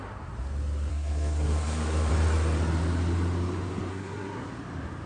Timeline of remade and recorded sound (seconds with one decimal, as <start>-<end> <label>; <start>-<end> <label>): 0.0-0.9 recorded; 0.9-2.1 remade; 2.1-3.9 recorded; 3.9-4.5 remade; 4.5-5.1 recorded